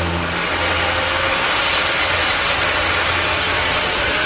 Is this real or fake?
real